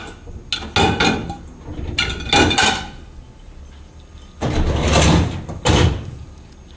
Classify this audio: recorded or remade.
recorded